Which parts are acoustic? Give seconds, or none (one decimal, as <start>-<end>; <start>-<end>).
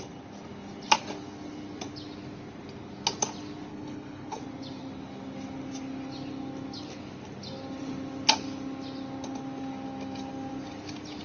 0.0-3.7; 4.4-11.2